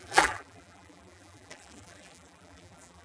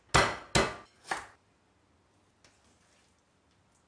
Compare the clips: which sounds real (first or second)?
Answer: second